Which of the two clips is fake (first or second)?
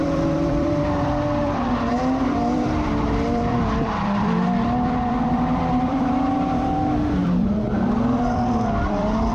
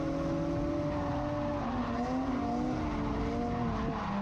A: first